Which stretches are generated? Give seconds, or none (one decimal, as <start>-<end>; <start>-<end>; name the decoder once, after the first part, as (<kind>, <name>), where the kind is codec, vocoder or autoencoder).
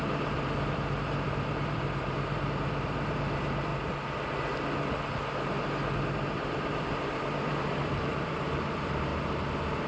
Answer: 0.0-3.7 (vocoder, BigVGAN v2); 6.0-9.1